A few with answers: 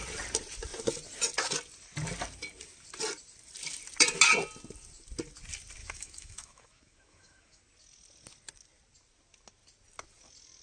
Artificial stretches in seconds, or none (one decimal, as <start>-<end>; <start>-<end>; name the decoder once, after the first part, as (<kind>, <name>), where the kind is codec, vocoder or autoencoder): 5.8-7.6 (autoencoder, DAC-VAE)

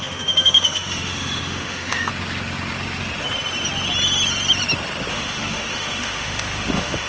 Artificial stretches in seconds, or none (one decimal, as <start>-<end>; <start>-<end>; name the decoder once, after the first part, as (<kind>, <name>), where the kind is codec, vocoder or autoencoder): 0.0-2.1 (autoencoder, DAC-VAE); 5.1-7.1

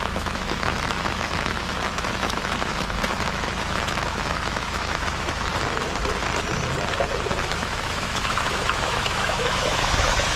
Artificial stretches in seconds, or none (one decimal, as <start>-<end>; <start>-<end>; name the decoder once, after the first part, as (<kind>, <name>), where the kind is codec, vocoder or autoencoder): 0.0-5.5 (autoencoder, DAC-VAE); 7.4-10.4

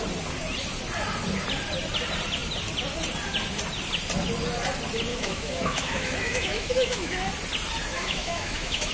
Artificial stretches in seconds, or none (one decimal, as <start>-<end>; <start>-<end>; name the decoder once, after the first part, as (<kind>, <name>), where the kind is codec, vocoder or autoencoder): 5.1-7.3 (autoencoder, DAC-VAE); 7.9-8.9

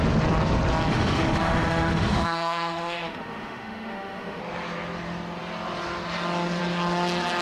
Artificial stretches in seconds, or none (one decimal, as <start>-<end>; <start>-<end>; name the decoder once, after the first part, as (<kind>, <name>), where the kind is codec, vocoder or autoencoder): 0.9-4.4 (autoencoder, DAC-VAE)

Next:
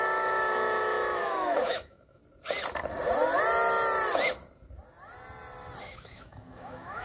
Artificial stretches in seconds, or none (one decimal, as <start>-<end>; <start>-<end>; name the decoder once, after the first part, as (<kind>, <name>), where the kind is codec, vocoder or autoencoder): 0.0-2.2 (autoencoder, DAC-VAE); 5.8-7.0

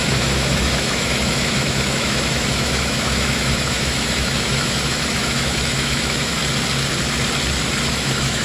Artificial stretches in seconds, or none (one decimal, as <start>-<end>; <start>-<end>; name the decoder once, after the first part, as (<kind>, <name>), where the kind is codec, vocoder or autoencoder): 0.0-6.4 (autoencoder, DAC-VAE); 7.9-8.4

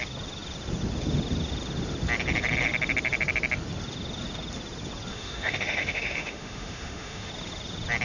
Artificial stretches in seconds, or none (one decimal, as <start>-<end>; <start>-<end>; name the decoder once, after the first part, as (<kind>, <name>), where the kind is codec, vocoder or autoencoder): 5.1-7.3 (autoencoder, DAC-VAE)